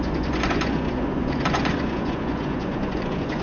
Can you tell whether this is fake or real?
fake